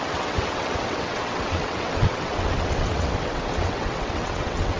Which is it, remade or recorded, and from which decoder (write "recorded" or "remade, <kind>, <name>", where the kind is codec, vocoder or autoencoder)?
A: remade, vocoder, WaveNeXt